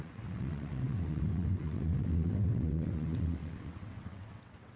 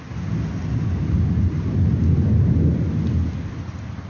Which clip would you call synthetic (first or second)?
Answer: first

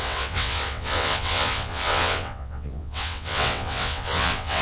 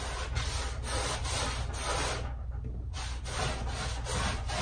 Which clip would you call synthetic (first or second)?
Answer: first